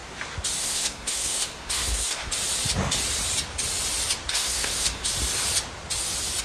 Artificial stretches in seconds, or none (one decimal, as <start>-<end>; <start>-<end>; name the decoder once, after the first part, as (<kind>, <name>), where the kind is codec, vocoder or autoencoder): 0.6-2.3 (codec, SNAC); 4.3-5.1